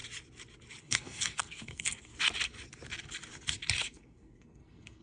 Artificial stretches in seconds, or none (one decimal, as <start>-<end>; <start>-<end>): 0.8-2.1; 3.8-5.0